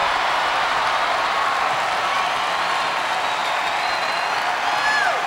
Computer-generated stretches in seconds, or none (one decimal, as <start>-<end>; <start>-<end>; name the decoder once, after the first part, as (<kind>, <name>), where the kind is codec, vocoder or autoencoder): none